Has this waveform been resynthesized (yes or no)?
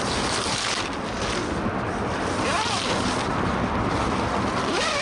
no